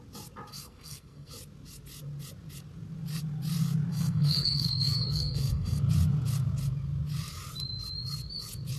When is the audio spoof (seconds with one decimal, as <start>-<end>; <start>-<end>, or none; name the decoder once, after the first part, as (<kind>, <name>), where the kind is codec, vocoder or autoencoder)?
0.5-1.3 (codec, SNAC); 3.9-5.8